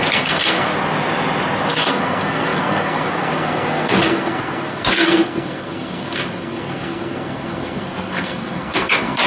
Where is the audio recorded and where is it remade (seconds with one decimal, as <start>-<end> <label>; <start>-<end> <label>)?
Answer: 0.0-0.7 remade; 0.7-1.7 recorded; 1.7-9.3 remade